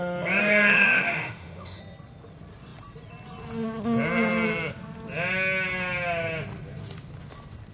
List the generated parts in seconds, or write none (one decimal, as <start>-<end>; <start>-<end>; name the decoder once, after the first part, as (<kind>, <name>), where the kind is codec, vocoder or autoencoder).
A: 0.4-1.8 (autoencoder, DAC-VAE)